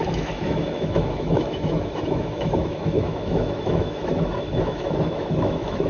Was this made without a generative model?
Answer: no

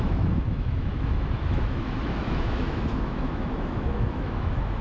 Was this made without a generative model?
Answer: no